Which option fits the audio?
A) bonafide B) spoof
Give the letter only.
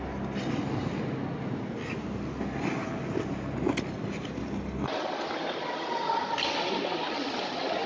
A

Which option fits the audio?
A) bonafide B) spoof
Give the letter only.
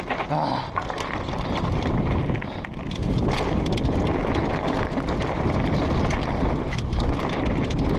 A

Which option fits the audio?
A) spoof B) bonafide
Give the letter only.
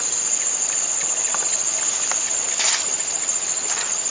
B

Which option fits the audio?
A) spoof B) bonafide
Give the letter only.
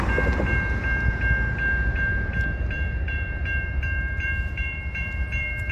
A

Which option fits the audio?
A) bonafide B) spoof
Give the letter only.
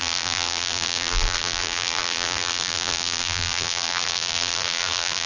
B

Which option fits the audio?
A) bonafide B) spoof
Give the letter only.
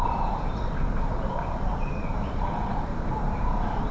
B